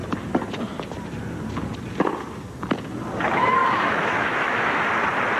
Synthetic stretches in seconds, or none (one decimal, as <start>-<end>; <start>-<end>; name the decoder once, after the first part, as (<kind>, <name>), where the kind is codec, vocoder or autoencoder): 3.6-4.8 (autoencoder, DAC-VAE)